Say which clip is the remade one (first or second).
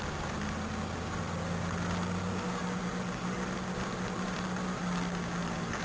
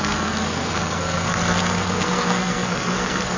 second